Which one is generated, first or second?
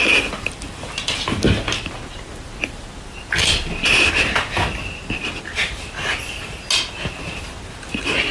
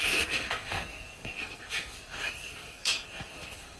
second